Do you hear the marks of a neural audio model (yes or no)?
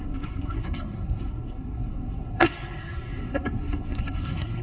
yes